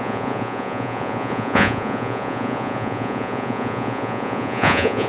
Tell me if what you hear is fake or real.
fake